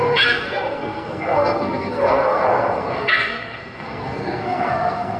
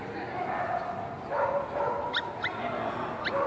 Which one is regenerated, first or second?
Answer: first